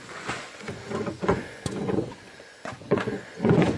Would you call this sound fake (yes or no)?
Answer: yes